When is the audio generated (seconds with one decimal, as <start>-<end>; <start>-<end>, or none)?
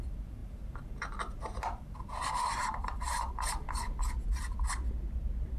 0.0-3.6